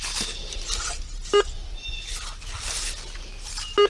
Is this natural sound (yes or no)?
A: yes